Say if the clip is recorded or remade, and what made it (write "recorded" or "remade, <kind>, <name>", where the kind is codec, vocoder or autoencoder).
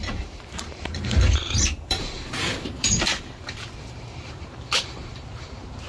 remade, vocoder, BigVGAN v2